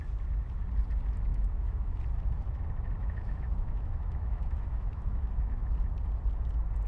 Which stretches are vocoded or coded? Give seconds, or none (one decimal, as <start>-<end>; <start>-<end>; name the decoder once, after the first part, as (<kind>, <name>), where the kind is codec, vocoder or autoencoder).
1.3-2.0 (autoencoder, DAC-VAE); 3.0-5.6